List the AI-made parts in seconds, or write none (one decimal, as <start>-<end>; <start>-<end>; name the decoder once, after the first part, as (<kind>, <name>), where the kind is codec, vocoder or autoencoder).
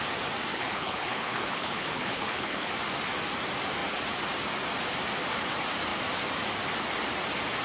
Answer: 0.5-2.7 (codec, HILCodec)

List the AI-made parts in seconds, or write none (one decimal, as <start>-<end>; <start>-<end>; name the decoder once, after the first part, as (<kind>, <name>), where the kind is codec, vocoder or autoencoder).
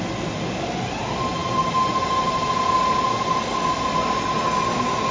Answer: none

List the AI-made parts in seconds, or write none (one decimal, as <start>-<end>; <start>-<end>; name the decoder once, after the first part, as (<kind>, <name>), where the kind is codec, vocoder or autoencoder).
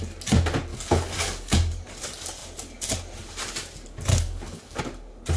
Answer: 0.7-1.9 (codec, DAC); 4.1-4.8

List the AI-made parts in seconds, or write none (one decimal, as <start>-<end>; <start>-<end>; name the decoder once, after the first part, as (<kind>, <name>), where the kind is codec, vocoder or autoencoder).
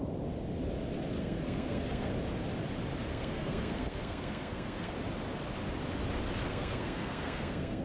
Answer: 1.2-2.1 (codec, SNAC); 3.1-4.9; 6.5-7.8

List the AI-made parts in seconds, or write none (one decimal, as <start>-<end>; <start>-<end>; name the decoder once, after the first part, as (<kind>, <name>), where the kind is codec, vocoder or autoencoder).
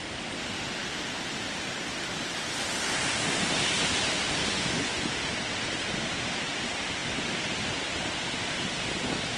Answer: 4.4-5.1 (vocoder, Vocos)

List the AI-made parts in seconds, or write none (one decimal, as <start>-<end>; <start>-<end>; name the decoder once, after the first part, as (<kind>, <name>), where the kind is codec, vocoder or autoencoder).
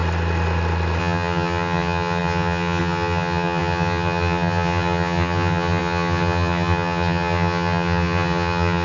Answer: 1.0-8.8 (vocoder, HiFi-GAN)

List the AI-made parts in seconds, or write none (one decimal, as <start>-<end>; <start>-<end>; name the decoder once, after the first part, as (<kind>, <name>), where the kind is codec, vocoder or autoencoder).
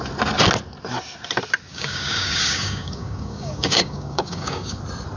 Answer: 1.7-4.8 (codec, DAC)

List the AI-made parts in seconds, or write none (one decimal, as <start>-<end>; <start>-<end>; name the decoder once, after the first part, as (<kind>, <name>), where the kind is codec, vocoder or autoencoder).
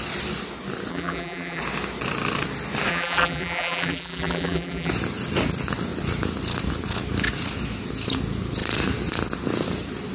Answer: 0.9-1.6 (vocoder, BigVGAN v2); 2.9-4.9